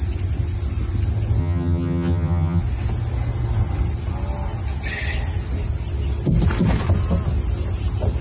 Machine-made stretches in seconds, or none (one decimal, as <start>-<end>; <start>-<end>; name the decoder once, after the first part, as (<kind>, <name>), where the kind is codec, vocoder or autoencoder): 1.4-2.6 (vocoder, HiFi-GAN)